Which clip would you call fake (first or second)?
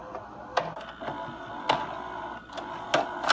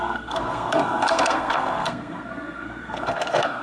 second